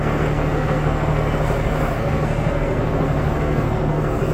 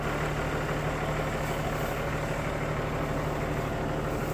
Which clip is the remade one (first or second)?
first